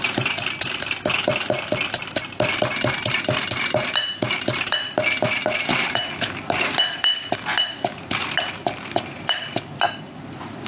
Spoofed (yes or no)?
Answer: no